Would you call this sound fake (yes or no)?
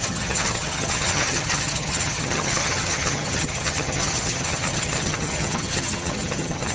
yes